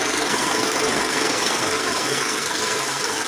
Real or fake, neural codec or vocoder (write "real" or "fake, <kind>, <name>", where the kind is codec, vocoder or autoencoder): fake, codec, SNAC